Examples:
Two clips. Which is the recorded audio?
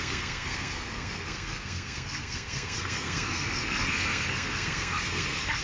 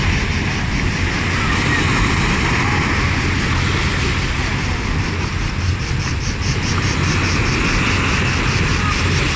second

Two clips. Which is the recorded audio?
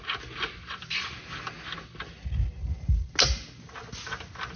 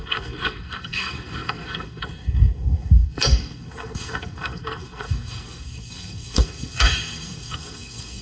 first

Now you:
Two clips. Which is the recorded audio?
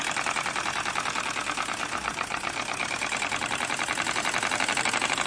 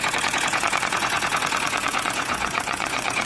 first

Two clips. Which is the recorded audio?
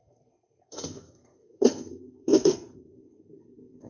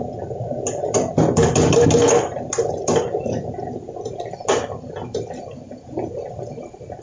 second